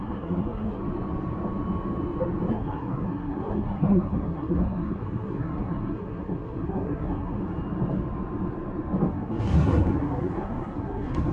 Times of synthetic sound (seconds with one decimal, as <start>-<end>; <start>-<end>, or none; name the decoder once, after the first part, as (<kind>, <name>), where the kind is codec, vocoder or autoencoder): 0.0-0.8 (codec, SNAC); 2.5-7.4; 9.1-11.3